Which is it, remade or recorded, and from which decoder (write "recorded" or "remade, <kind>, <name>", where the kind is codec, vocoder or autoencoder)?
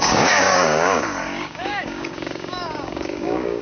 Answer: remade, codec, DAC